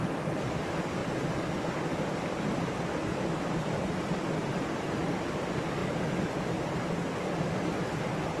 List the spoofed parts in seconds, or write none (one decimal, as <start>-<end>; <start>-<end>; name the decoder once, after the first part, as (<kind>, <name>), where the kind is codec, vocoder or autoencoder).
none